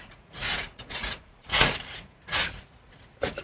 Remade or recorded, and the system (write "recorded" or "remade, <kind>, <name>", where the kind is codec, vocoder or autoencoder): remade, vocoder, Vocos